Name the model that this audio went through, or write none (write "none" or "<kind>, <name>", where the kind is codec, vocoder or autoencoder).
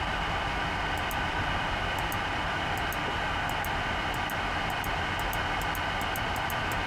none